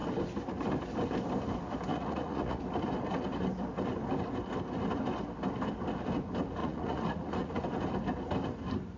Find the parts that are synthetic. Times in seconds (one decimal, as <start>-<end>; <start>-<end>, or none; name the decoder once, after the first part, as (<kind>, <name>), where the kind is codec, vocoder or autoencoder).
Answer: 1.9-2.6 (vocoder, Vocos); 6.6-7.6